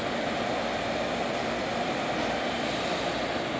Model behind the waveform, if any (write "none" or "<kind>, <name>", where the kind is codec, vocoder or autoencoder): none